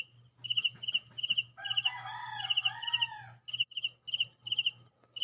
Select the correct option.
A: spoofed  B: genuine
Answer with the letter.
B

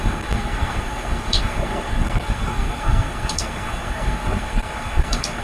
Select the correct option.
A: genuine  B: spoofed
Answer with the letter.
B